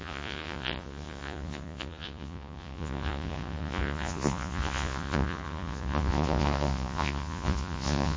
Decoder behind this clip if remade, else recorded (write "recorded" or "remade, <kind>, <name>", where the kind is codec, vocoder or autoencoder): remade, vocoder, Vocos